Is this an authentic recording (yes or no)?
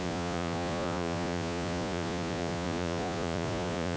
no